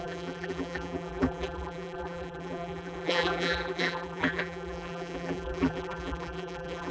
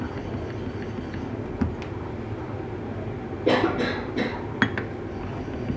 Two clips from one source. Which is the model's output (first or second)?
first